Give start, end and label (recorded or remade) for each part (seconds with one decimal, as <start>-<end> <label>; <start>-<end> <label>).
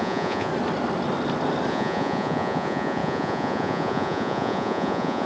0.0-0.5 remade; 0.5-1.7 recorded; 1.7-5.3 remade